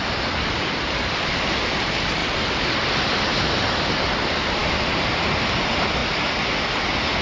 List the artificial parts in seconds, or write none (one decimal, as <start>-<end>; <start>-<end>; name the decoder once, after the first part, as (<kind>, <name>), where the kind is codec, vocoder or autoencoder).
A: none